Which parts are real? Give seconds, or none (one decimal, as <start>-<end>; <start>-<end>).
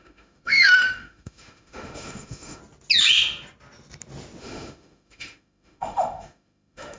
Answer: 2.6-4.4